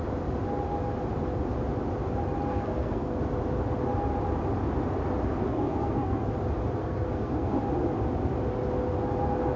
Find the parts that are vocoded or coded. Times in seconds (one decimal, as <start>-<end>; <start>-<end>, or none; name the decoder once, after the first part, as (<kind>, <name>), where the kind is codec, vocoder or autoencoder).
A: 2.5-3.2 (codec, SNAC); 5.5-6.3; 6.8-7.6

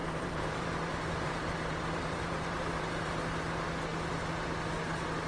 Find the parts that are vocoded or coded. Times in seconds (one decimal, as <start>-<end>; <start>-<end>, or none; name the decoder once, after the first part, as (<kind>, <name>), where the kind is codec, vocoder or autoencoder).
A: 0.0-3.1 (vocoder, BigVGAN v2)

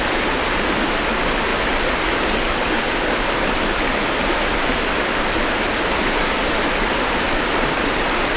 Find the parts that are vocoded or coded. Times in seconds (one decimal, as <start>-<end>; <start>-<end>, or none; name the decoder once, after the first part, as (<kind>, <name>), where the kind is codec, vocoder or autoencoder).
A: none

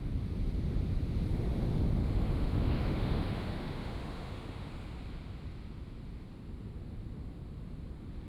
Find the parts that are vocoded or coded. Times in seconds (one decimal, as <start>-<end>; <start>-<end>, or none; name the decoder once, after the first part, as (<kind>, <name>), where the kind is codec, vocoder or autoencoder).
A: 2.0-4.7 (autoencoder, DAC-VAE)

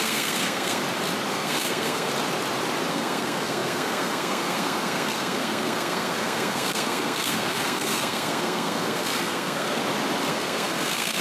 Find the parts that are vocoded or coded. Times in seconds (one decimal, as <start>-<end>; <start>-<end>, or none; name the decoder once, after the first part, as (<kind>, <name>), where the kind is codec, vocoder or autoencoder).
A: 0.0-0.8 (codec, SNAC); 1.3-2.1; 2.9-9.8; 10.3-11.2

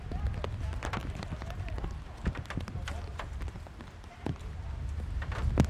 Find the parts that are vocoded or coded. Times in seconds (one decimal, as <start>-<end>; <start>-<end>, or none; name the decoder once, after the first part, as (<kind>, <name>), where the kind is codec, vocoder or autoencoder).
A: 1.0-4.4 (vocoder, BigVGAN v2)

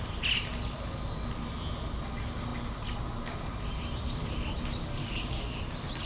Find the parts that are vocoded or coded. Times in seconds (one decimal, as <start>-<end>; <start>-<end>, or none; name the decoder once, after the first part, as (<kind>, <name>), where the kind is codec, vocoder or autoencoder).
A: 5.0-5.6 (codec, DAC)